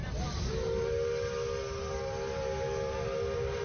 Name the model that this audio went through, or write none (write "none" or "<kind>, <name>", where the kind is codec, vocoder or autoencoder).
none